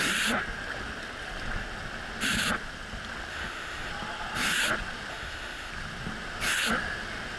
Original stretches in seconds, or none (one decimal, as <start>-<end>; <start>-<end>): 0.0-3.3; 3.9-5.1; 5.7-7.4